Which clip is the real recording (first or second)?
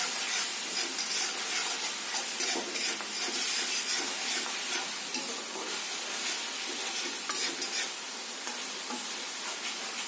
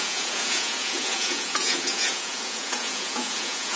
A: first